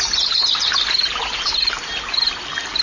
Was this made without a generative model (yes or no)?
yes